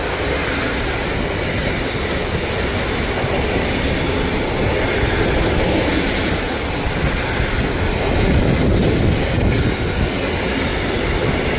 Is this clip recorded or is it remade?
recorded